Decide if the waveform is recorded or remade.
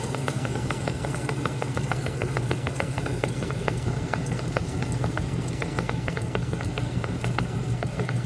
remade